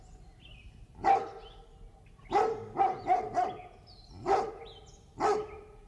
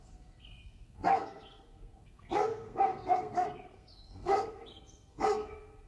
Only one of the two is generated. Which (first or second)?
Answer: second